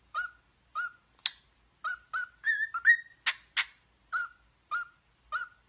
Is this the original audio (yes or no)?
yes